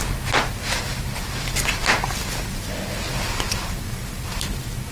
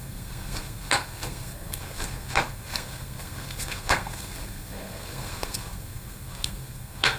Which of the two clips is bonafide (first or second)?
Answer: first